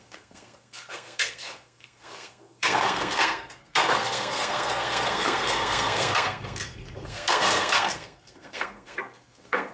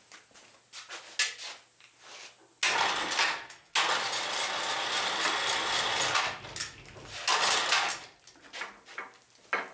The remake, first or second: first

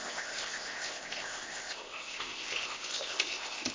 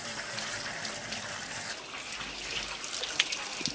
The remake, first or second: first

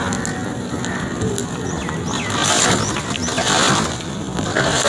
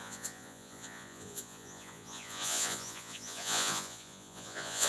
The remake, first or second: second